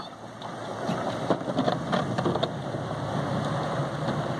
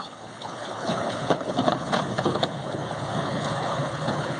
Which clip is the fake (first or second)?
second